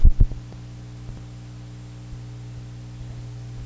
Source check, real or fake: real